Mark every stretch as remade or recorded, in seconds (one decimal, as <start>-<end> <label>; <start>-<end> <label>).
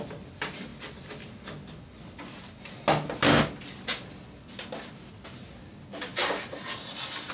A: 0.0-0.7 remade; 0.7-5.1 recorded; 5.1-7.3 remade